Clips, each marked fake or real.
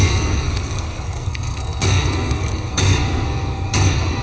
fake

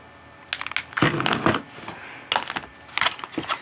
real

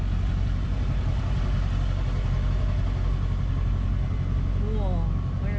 real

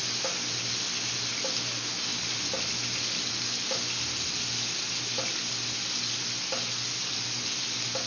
real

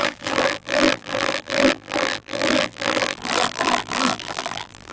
fake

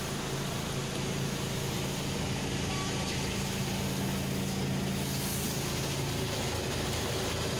real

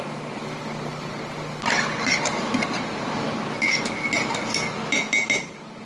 real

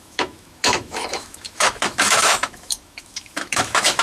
fake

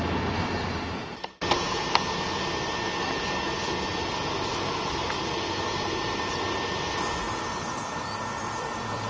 real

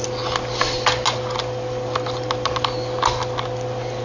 real